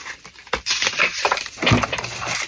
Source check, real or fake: fake